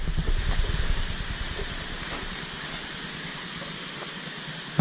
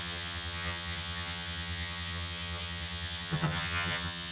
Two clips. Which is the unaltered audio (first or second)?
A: first